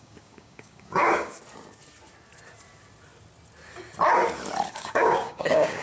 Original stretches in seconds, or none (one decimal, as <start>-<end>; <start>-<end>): 1.3-4.7

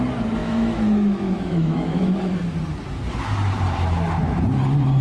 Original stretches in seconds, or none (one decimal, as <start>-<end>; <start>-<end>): 0.0-0.4; 2.2-5.0

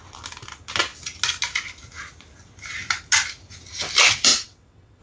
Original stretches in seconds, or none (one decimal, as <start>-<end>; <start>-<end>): 0.0-4.3

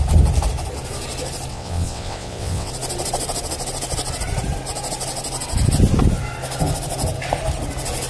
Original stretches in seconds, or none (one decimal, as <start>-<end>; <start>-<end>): 0.0-1.5; 2.7-8.1

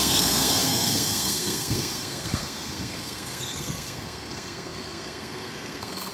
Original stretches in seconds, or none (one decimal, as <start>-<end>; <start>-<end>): none

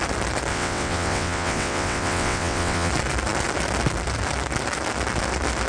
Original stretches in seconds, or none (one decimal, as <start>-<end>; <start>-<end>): 0.0-0.5; 2.9-5.7